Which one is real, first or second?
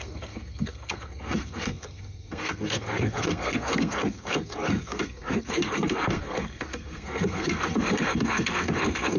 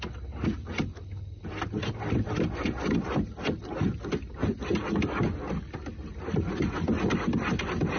second